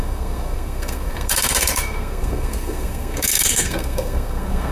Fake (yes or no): yes